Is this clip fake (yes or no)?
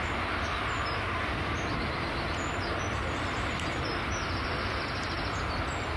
no